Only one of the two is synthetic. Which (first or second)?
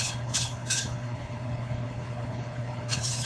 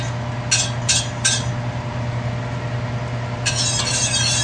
first